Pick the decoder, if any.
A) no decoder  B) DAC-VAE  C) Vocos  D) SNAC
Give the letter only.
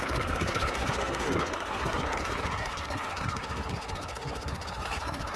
D